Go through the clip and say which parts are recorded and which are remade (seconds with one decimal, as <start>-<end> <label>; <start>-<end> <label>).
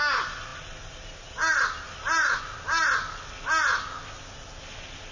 0.0-5.1 recorded